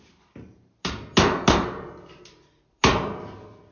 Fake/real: fake